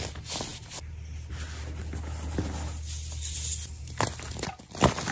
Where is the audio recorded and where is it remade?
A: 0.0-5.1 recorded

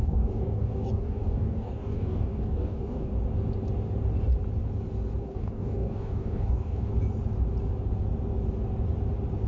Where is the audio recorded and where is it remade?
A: 0.0-3.1 remade; 3.1-5.2 recorded; 5.2-6.9 remade; 6.9-9.5 recorded

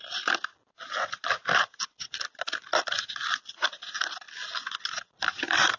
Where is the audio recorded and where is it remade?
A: 0.0-5.8 recorded

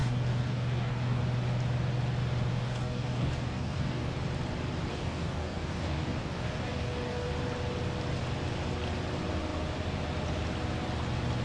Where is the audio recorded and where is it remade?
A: 0.0-1.2 remade; 1.2-2.5 recorded; 2.5-4.1 remade; 4.1-4.9 recorded; 4.9-7.3 remade; 7.3-11.4 recorded

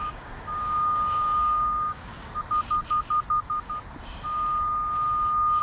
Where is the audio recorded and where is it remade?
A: 0.0-2.1 remade; 2.1-5.6 recorded

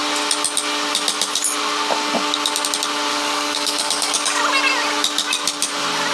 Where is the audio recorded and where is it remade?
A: 0.0-3.1 recorded; 3.1-4.4 remade; 4.4-6.1 recorded

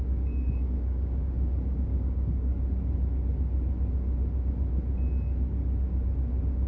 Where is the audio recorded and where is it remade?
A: 0.0-2.5 remade; 2.5-6.7 recorded

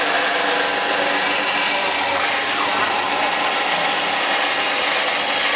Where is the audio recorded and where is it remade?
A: 0.0-5.6 recorded